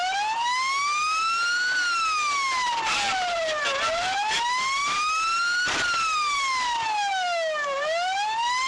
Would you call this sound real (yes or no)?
yes